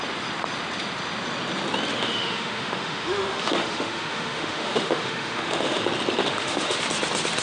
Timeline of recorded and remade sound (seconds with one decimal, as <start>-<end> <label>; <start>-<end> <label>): 0.0-1.9 recorded; 1.9-5.8 remade; 5.8-6.2 recorded; 6.2-6.8 remade; 6.8-7.4 recorded